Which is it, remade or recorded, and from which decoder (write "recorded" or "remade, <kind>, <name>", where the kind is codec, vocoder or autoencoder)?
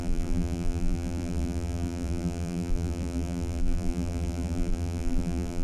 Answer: remade, vocoder, BigVGAN v2